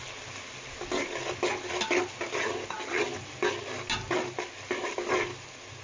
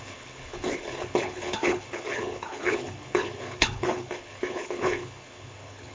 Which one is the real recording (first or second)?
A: first